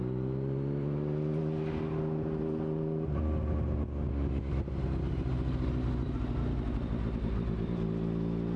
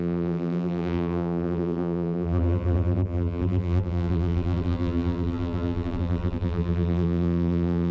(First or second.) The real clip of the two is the first